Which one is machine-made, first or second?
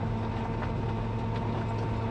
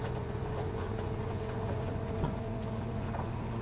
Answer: second